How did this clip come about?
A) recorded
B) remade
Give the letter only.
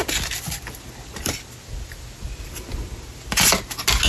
A